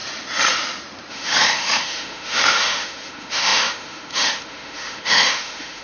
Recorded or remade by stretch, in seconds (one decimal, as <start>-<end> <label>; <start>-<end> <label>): 0.0-1.1 recorded; 1.1-5.8 remade